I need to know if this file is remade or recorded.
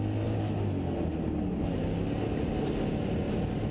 recorded